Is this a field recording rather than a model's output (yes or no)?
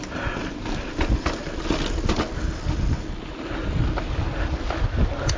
yes